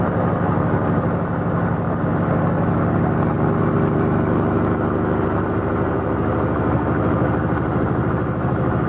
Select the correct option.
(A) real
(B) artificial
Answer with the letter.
A